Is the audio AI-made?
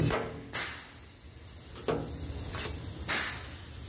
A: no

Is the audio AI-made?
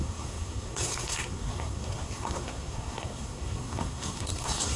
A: yes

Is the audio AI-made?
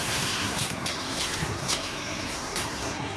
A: yes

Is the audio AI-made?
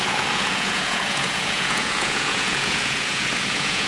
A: yes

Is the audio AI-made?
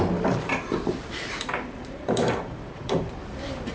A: yes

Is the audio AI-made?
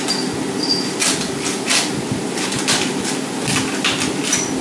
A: no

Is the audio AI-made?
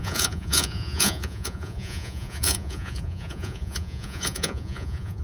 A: yes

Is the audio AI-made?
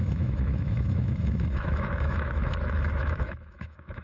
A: yes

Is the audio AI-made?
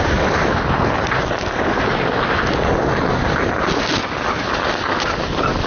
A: no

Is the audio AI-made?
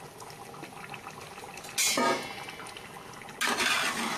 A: no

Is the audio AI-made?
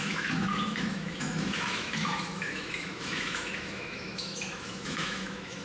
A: yes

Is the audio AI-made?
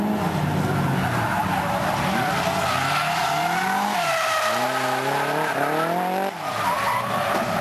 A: no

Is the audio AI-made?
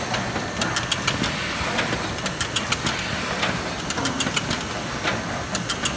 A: no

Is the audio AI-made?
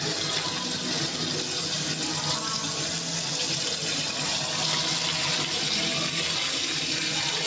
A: no